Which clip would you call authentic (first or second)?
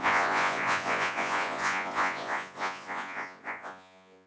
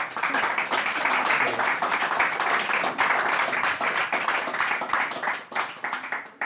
second